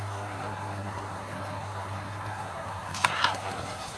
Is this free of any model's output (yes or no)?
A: no